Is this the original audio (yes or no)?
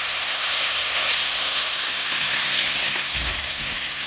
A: no